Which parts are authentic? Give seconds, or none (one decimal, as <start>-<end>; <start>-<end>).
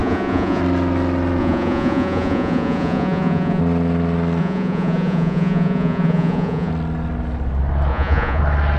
0.6-1.4; 3.6-4.4; 6.7-7.9; 8.4-8.8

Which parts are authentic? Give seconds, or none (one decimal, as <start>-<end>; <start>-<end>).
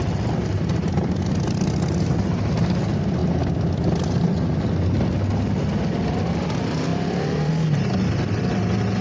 0.0-6.9; 7.5-9.0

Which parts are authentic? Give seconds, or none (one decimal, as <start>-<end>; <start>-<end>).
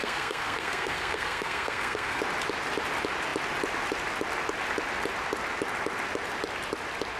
2.2-7.2